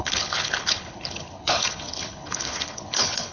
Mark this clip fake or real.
fake